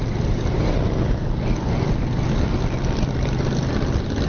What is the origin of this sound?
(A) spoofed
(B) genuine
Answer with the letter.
B